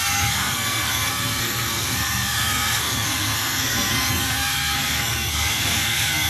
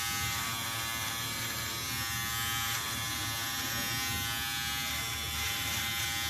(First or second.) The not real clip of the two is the first